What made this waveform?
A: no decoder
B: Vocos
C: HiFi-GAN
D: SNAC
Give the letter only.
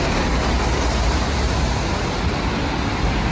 A